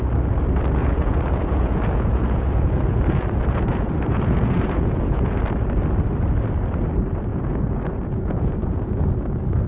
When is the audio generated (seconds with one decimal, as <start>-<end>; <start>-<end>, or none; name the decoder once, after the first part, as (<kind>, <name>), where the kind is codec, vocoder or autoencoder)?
0.8-5.4 (vocoder, Vocos); 7.3-9.0